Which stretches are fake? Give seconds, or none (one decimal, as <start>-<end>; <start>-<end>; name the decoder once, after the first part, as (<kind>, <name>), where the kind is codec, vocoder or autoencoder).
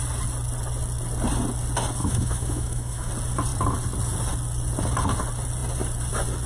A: 2.0-3.1 (autoencoder, DAC-VAE)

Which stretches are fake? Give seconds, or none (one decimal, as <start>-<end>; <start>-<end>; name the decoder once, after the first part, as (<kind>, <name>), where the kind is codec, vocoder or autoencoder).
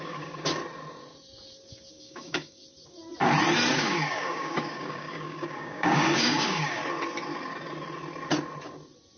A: 0.0-0.6 (codec, DAC); 1.9-2.6; 3.7-6.8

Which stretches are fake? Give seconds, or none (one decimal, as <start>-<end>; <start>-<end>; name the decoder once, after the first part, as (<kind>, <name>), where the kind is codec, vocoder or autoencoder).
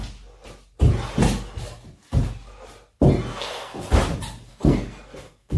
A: 3.3-3.9 (codec, SNAC); 4.5-5.6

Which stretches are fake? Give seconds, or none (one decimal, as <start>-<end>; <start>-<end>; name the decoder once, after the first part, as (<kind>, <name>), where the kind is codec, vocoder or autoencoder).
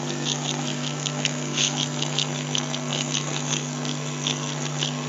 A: 0.0-5.1 (codec, SNAC)